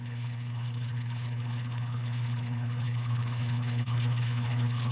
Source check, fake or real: fake